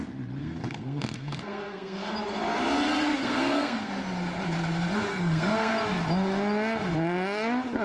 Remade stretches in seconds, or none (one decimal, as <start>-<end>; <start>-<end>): 0.4-2.1; 3.2-3.9; 5.1-5.7